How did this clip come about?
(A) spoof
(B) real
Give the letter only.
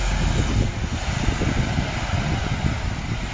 B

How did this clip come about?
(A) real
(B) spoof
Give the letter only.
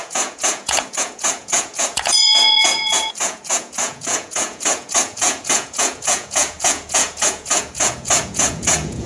B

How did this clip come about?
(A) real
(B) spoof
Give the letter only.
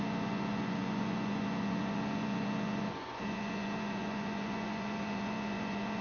B